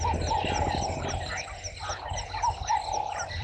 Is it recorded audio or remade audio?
recorded